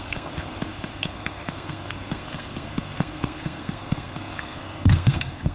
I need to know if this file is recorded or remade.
remade